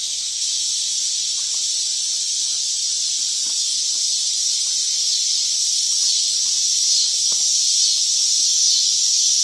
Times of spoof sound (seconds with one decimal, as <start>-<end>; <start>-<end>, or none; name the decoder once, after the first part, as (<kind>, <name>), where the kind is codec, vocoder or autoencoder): 1.9-3.1 (vocoder, BigVGAN v2); 3.7-6.9